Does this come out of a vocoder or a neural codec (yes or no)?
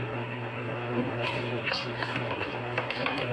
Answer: yes